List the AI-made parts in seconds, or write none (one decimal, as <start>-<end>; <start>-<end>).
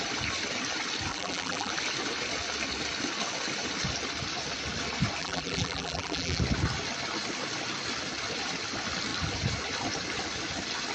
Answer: 1.1-1.7; 5.2-6.4